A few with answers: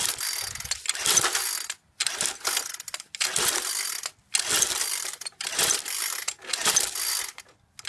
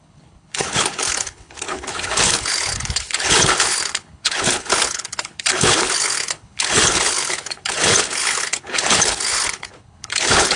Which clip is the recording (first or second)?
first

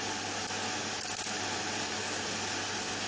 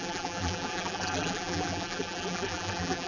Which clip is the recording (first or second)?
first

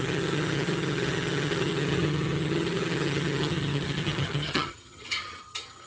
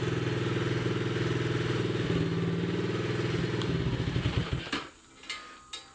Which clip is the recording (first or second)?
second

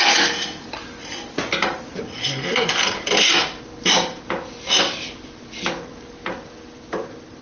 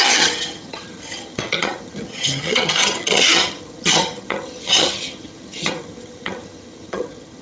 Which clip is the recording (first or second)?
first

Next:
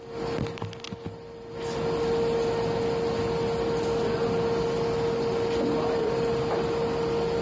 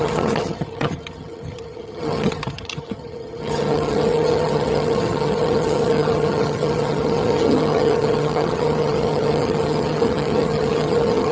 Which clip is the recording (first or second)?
first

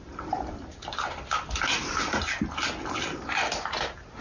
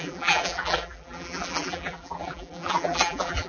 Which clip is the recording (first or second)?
first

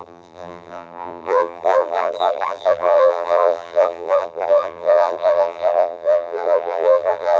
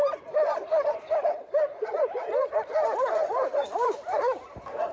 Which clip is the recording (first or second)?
second